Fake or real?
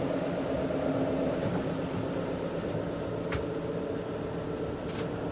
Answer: real